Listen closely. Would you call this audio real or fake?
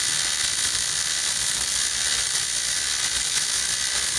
real